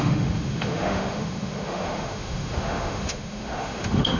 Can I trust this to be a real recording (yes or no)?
no